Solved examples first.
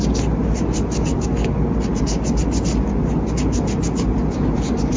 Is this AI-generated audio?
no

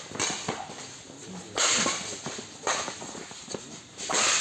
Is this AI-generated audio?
no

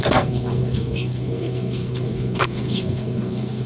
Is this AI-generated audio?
yes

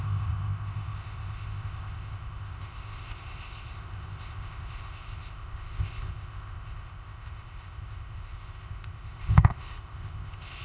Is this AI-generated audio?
yes